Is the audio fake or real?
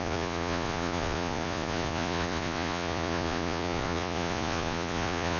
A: fake